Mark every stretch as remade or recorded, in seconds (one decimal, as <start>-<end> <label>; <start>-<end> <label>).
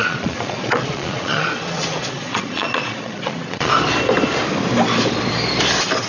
0.0-3.7 remade; 3.7-6.1 recorded